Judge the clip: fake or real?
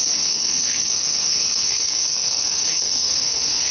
fake